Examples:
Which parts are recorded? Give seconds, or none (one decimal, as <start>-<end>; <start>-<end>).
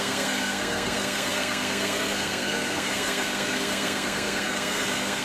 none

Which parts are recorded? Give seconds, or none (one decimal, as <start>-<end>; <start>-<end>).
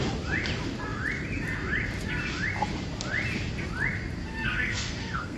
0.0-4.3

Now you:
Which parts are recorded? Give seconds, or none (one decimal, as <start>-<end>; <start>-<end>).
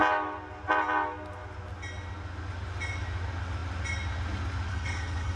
0.0-4.7